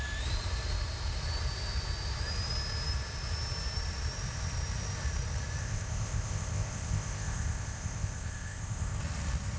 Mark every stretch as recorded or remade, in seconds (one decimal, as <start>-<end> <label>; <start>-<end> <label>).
0.0-5.6 recorded; 5.6-9.0 remade; 9.0-9.6 recorded